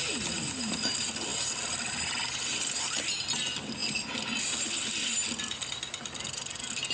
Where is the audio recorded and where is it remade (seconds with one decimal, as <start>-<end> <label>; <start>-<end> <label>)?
0.0-6.9 recorded